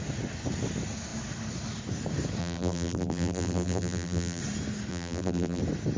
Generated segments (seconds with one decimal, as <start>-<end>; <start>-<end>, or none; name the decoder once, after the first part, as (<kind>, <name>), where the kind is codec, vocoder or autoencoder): 2.4-4.4 (vocoder, BigVGAN v2); 4.9-5.6